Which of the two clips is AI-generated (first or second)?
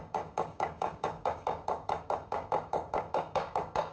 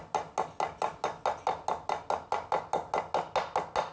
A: first